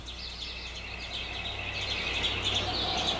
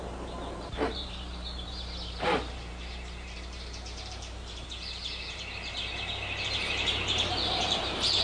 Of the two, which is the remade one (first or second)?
second